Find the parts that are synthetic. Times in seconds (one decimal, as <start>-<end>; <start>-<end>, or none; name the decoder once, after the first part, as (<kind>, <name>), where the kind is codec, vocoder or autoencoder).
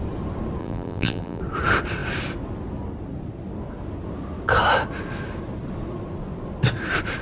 0.6-1.4 (vocoder, BigVGAN v2)